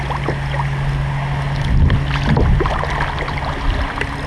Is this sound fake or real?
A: real